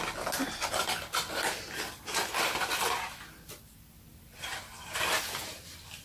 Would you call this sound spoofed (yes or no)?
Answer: no